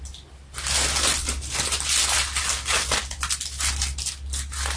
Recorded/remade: recorded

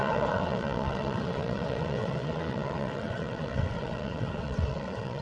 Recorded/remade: remade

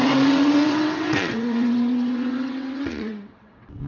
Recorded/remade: remade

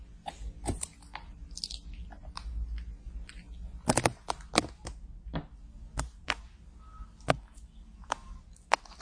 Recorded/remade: recorded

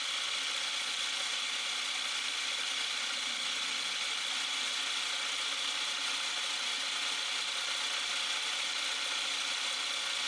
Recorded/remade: recorded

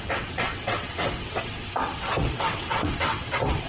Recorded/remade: remade